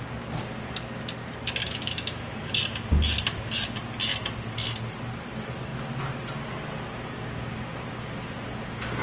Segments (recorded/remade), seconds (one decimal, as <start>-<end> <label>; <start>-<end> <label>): 0.0-1.6 recorded; 1.6-2.6 remade; 2.6-9.0 recorded